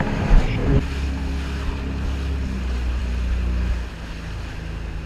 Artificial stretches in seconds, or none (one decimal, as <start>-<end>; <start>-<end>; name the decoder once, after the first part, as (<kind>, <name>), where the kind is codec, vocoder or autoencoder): none

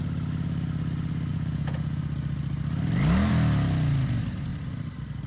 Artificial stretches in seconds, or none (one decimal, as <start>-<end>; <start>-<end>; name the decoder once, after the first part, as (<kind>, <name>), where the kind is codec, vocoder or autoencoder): 1.3-2.0 (vocoder, Vocos)

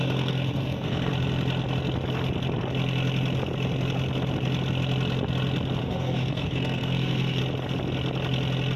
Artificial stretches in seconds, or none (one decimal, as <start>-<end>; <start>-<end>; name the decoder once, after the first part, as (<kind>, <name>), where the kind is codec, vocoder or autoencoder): 0.0-1.1 (codec, SNAC); 5.8-7.4